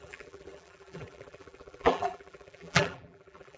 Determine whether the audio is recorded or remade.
remade